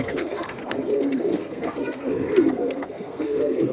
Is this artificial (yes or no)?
yes